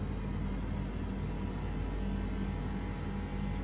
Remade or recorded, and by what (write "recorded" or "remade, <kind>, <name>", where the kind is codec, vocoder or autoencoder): recorded